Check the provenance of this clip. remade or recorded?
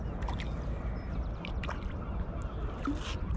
recorded